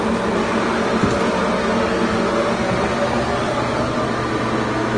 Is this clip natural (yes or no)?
yes